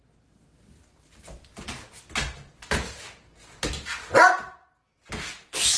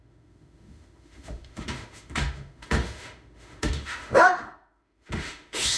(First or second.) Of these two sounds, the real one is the first